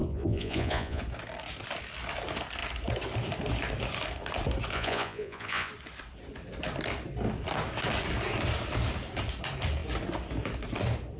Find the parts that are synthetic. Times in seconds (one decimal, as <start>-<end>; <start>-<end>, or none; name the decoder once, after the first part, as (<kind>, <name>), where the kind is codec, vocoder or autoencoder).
0.0-1.0 (vocoder, Vocos); 4.7-5.7